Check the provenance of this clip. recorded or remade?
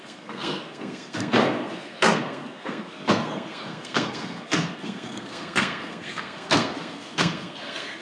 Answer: remade